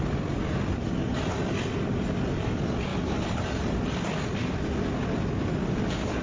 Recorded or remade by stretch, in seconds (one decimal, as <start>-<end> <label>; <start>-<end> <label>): 0.0-6.2 recorded